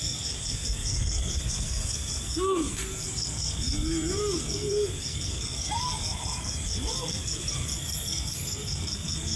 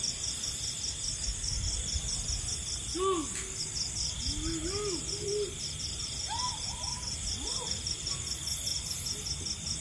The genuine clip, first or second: second